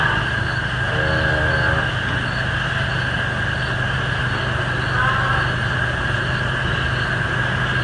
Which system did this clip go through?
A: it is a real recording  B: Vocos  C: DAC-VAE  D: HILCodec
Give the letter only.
A